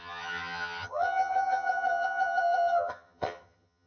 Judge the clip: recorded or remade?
remade